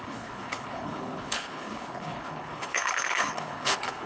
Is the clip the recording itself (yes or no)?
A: no